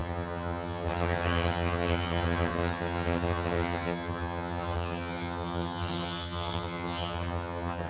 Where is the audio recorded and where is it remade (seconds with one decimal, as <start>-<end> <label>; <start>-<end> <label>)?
0.0-7.9 remade